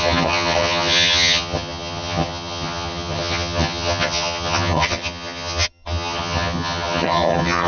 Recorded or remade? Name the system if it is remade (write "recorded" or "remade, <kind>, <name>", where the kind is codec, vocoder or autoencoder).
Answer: remade, vocoder, HiFi-GAN